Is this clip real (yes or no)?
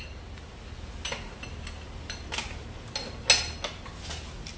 yes